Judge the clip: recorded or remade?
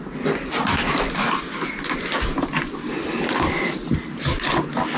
recorded